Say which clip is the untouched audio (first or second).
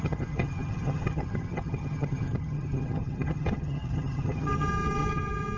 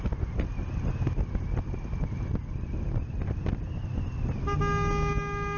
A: second